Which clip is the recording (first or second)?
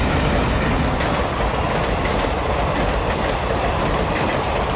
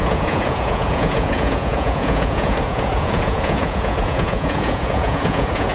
first